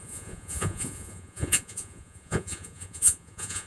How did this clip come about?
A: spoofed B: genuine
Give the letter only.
A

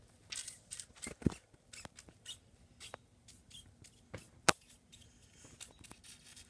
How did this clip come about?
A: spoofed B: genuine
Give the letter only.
B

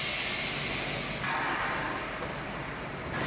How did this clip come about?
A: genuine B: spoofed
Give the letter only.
A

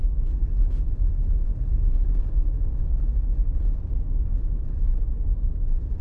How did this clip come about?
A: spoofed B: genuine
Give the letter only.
B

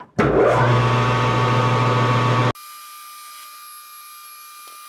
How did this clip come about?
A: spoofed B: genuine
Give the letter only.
B